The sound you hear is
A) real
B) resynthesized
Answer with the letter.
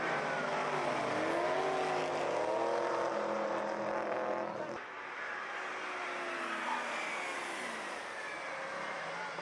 A